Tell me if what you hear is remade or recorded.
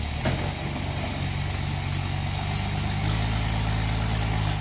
recorded